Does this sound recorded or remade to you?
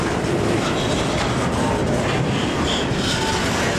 recorded